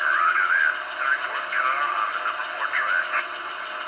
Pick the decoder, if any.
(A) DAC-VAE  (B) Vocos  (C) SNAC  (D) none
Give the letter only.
D